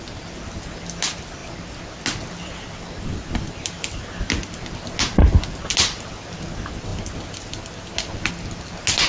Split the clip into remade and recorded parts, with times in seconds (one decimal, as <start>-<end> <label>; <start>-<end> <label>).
0.0-9.1 recorded